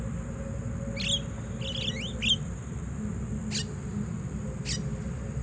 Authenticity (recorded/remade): recorded